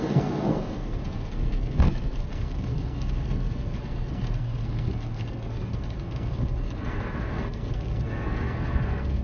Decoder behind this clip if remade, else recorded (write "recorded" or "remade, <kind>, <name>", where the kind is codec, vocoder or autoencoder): remade, codec, SNAC